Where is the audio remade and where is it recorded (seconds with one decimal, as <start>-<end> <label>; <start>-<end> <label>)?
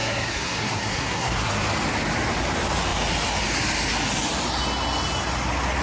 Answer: 0.0-1.5 remade; 1.5-5.8 recorded